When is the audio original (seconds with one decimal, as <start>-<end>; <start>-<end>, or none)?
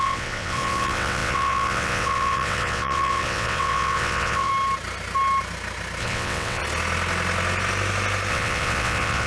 4.5-6.0; 6.6-8.3